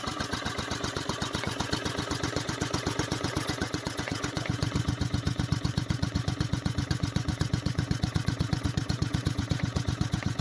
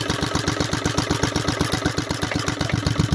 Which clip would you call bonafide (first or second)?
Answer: second